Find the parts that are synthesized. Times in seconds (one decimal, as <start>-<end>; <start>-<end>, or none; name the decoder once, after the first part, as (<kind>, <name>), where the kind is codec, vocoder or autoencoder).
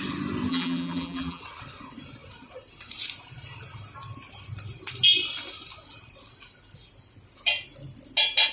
0.5-1.4 (vocoder, BigVGAN v2)